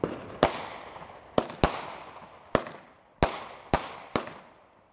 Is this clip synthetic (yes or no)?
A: no